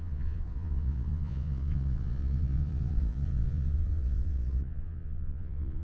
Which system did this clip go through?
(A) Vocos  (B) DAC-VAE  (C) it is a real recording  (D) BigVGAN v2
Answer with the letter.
A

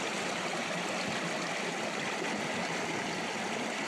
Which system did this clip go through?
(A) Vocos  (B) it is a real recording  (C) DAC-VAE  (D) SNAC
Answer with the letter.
B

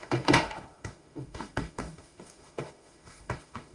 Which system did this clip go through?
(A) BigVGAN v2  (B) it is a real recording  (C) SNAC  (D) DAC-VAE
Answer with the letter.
D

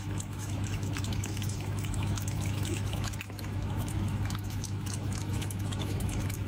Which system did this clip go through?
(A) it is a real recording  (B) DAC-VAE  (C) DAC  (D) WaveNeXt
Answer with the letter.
B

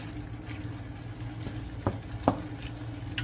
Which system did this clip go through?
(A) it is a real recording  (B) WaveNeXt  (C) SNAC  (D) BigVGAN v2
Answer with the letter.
A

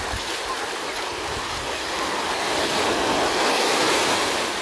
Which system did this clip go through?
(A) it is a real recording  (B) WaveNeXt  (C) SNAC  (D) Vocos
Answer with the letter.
A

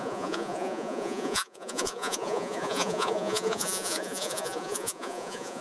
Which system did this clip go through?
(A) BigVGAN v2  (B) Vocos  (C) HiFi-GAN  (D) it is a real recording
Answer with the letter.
B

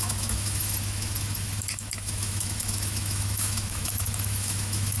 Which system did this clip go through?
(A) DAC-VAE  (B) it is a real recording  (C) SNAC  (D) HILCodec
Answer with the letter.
A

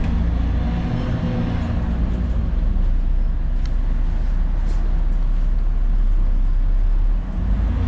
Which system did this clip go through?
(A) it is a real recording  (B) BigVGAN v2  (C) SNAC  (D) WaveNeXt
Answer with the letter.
A